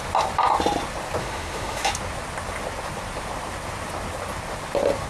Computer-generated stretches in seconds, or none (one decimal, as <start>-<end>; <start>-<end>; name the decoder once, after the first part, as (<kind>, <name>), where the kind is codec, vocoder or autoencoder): 1.2-1.9 (autoencoder, DAC-VAE)